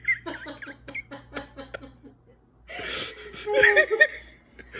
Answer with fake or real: real